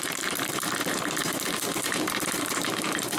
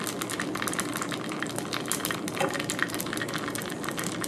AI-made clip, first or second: first